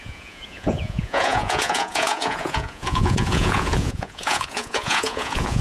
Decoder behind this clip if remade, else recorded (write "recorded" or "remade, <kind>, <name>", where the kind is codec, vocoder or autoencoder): remade, vocoder, Vocos